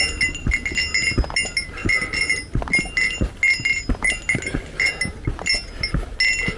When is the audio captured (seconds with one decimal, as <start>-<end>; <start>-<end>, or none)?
0.0-6.6